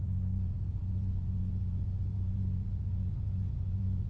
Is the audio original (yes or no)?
no